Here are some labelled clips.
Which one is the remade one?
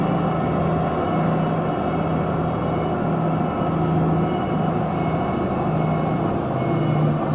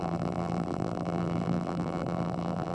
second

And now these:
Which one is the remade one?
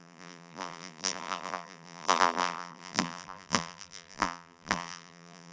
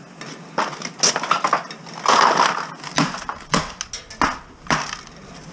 first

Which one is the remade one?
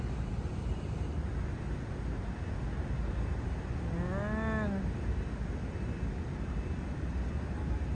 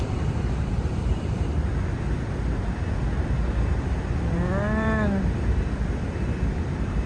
second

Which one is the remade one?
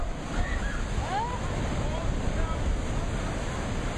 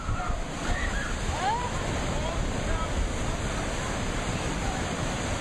second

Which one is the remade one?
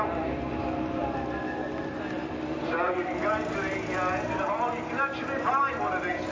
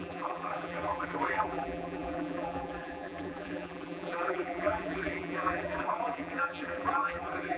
second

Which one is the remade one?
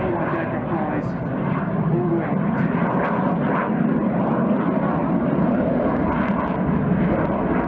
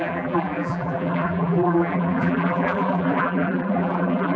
second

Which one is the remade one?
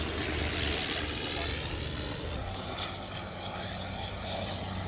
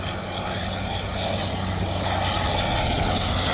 first